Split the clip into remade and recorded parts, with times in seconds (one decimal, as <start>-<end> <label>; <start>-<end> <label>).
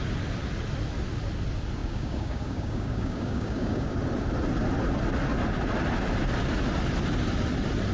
0.0-1.8 recorded; 1.8-3.9 remade; 3.9-7.9 recorded